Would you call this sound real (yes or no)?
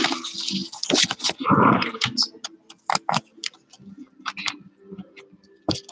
yes